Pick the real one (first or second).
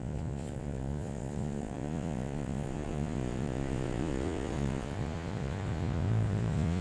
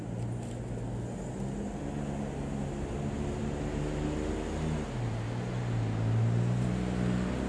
second